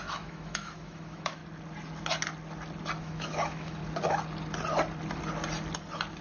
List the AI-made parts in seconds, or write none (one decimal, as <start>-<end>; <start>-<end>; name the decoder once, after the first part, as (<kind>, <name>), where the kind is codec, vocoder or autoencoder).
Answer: 0.0-1.4 (autoencoder, DAC-VAE); 3.0-3.8